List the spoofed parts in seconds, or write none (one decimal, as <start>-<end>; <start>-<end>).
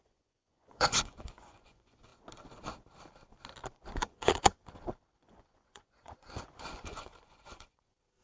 0.0-2.1; 3.8-4.6; 5.2-8.2